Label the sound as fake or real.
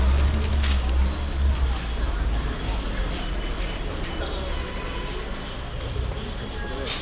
real